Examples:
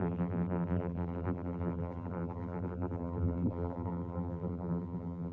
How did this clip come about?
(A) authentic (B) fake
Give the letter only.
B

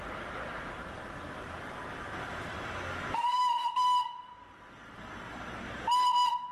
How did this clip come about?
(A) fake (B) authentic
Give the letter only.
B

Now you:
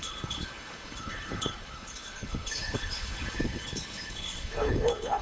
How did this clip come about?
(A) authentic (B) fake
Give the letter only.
B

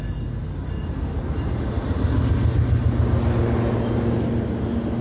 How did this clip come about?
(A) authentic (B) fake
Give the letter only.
A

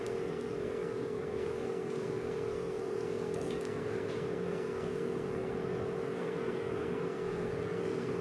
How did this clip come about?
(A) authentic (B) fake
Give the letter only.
B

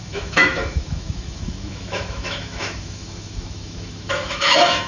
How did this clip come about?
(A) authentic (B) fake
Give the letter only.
B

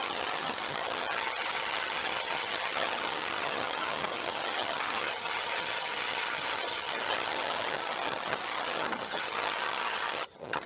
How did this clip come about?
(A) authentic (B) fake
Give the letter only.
B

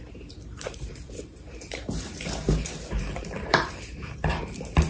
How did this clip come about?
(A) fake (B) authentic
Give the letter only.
A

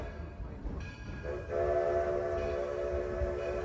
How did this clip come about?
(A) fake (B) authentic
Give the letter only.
B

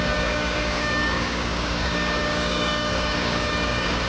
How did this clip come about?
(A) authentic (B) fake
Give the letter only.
B